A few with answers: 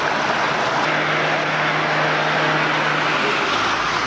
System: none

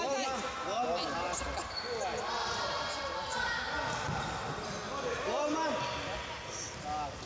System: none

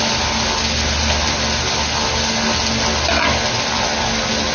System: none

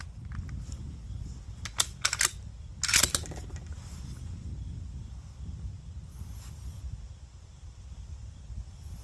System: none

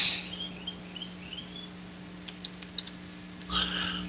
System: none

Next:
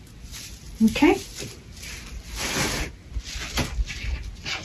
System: none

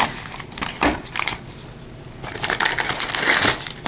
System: none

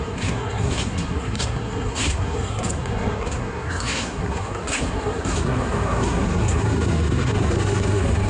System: codec, SNAC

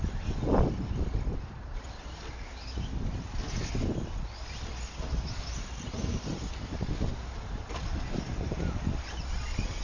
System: none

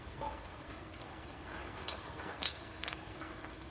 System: codec, SNAC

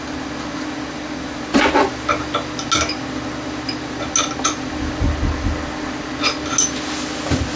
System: none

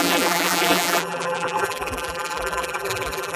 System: vocoder, BigVGAN v2